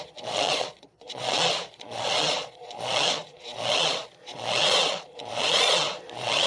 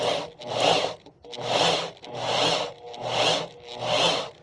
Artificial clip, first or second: first